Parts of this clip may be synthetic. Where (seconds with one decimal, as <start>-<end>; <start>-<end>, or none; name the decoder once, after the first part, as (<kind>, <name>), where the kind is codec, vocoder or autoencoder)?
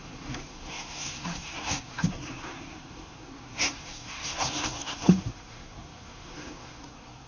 0.0-7.3 (codec, SNAC)